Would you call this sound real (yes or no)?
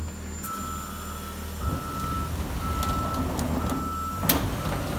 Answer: yes